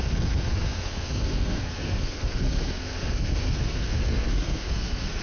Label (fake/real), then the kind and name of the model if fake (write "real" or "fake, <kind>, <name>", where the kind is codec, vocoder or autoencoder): fake, codec, SNAC